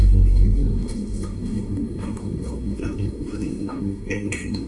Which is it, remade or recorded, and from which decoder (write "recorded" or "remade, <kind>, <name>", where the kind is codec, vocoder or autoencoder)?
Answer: remade, codec, SNAC